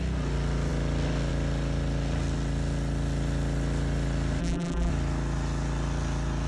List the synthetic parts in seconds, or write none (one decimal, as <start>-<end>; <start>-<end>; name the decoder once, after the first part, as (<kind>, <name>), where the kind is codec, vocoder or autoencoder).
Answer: 4.4-4.9 (vocoder, BigVGAN v2)

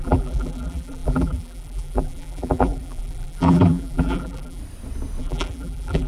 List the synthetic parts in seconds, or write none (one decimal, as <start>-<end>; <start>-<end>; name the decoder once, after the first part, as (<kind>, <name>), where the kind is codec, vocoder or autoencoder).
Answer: 0.0-4.6 (vocoder, BigVGAN v2); 5.2-6.1

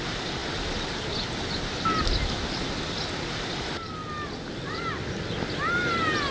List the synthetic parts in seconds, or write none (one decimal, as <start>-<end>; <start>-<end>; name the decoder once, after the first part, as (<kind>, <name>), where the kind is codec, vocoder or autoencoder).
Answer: none

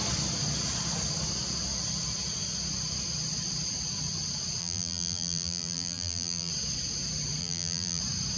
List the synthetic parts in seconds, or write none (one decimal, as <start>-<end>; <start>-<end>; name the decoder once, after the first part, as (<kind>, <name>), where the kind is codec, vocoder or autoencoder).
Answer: 4.6-6.5 (vocoder, BigVGAN v2); 7.4-8.0

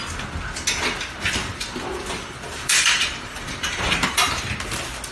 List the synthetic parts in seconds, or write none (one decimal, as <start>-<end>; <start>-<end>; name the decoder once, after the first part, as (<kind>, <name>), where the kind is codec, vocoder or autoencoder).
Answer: 1.4-4.5 (vocoder, BigVGAN v2)

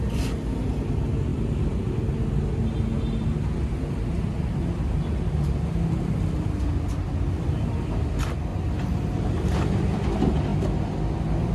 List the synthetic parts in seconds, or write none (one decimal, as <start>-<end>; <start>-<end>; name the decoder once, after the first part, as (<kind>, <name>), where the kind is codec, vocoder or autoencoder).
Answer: 8.5-9.1 (vocoder, BigVGAN v2)

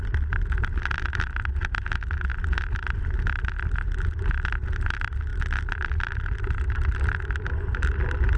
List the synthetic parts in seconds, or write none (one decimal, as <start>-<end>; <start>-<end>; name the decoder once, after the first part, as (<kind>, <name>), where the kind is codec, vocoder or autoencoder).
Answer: 5.3-6.0 (vocoder, BigVGAN v2)

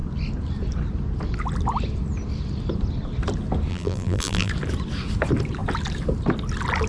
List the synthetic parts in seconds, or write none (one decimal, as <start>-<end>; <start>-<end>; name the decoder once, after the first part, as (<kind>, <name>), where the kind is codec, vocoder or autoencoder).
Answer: 3.7-4.5 (vocoder, BigVGAN v2)